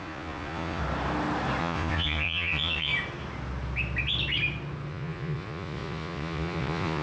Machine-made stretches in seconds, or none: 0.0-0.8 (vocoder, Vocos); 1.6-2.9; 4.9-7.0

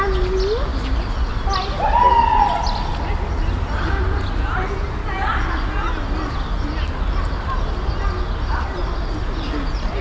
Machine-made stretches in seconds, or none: none

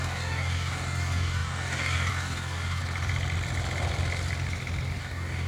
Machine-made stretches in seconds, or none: 0.0-2.8 (codec, DAC); 5.0-5.5

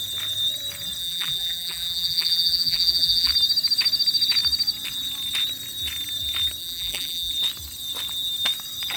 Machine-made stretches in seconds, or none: 1.0-3.3 (vocoder, BigVGAN v2); 6.6-7.3